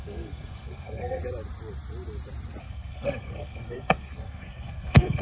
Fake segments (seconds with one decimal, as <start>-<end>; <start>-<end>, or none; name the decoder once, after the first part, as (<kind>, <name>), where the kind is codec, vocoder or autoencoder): 0.0-1.2 (codec, SNAC); 2.6-5.2